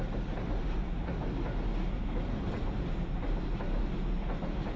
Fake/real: real